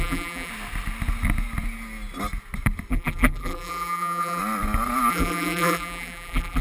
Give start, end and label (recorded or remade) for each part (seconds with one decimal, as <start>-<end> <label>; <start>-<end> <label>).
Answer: 0.0-0.5 remade; 0.5-2.9 recorded; 2.9-4.4 remade; 4.4-5.1 recorded; 5.1-6.6 remade